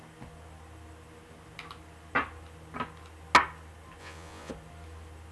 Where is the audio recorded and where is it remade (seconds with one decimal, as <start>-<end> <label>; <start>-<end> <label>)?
0.0-4.0 recorded; 4.0-4.5 remade; 4.5-5.3 recorded